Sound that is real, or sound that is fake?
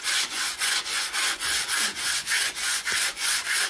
fake